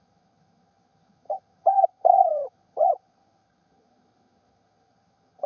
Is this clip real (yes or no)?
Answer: no